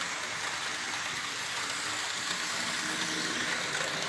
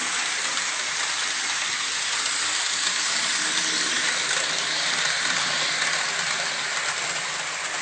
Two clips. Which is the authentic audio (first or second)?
first